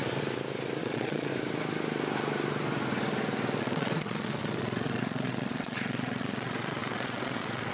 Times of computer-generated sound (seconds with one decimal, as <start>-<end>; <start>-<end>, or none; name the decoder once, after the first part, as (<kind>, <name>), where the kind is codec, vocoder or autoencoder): 0.8-1.3 (vocoder, Vocos); 3.6-7.7